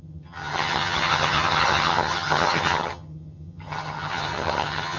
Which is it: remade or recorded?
remade